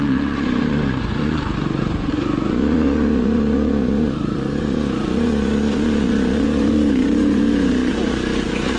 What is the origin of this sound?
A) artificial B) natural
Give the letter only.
A